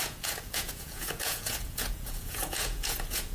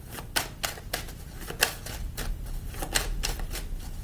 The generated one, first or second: first